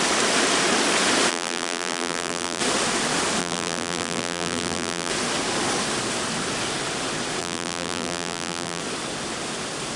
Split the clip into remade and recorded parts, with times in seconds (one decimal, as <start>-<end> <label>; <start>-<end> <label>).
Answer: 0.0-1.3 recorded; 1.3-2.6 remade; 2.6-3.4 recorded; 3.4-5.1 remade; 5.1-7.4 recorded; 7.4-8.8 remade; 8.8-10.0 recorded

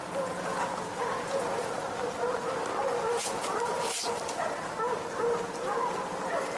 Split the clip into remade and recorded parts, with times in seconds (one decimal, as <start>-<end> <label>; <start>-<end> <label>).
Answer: 0.0-1.7 remade; 1.7-6.6 recorded

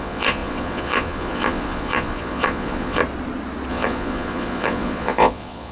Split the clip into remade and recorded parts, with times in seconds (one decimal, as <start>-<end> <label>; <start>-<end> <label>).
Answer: 0.0-3.0 remade; 3.0-3.7 recorded; 3.7-5.7 remade